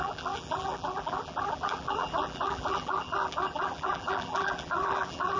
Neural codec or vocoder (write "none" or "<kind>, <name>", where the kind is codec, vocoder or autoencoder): vocoder, BigVGAN v2